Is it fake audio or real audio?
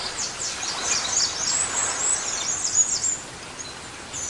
real